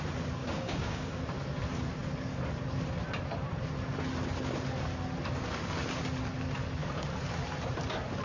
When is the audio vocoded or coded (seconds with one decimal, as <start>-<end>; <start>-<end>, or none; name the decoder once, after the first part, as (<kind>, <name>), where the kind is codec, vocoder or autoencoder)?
0.4-1.2 (codec, DAC)